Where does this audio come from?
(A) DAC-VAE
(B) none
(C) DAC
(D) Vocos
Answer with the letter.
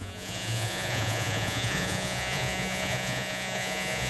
D